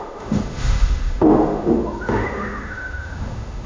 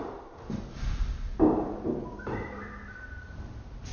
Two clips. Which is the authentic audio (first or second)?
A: second